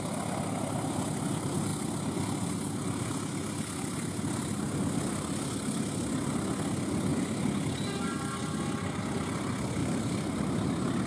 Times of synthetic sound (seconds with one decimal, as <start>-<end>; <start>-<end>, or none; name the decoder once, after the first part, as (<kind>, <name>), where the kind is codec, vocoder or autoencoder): 9.8-10.4 (vocoder, BigVGAN v2)